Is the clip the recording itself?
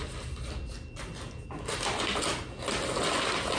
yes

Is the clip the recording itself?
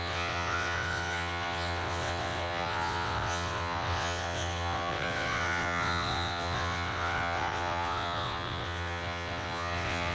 no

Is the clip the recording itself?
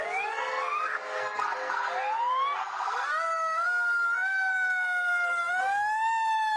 no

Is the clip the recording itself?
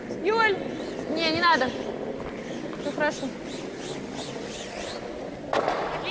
yes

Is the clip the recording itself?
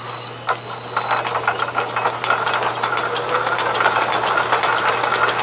yes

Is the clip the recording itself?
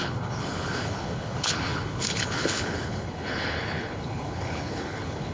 no